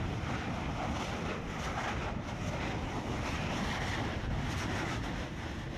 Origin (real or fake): real